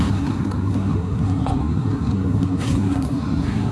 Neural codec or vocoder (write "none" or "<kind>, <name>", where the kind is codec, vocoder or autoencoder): codec, SNAC